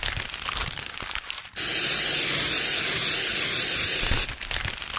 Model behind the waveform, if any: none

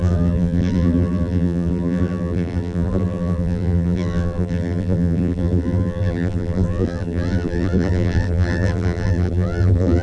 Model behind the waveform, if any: vocoder, BigVGAN v2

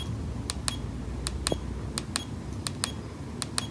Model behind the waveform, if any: none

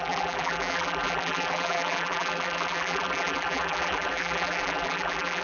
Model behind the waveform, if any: vocoder, BigVGAN v2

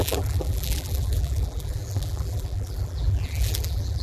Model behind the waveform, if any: vocoder, BigVGAN v2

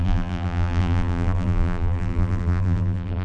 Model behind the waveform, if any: vocoder, BigVGAN v2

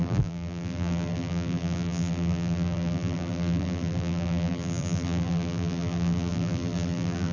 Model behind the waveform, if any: vocoder, BigVGAN v2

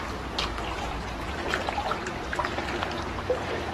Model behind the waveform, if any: vocoder, BigVGAN v2